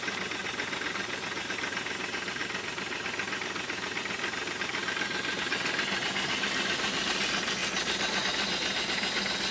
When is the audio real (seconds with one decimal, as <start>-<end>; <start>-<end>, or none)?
0.0-0.4; 1.5-7.6; 8.2-9.5